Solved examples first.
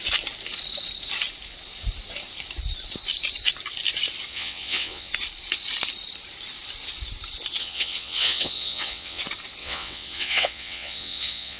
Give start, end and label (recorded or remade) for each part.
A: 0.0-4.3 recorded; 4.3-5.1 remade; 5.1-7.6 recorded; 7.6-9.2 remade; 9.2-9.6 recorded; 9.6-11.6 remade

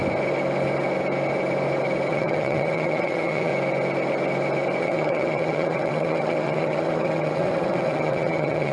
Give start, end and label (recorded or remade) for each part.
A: 0.0-2.1 recorded; 2.1-3.5 remade; 3.5-4.8 recorded; 4.8-8.7 remade

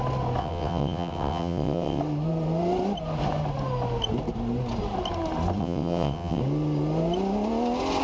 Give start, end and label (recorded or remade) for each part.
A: 0.0-0.4 recorded; 0.4-2.0 remade; 2.0-5.6 recorded; 5.6-6.4 remade; 6.4-8.0 recorded